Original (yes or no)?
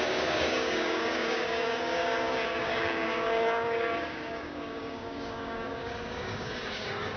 no